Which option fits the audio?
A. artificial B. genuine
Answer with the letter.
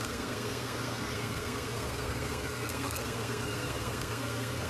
A